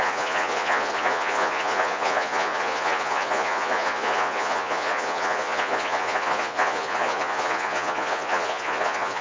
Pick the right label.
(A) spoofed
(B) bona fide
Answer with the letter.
A